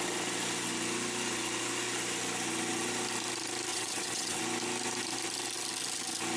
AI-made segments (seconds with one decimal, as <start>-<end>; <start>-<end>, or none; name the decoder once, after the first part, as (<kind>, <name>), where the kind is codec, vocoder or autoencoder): 3.7-4.4 (vocoder, WaveNeXt)